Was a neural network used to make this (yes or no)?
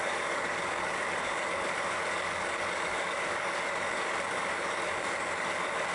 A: yes